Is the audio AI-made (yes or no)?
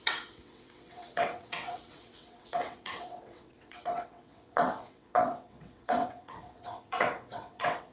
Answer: yes